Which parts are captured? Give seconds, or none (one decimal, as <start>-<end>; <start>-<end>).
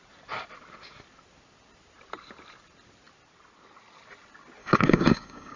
0.0-4.6